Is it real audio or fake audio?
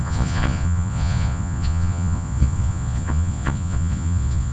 fake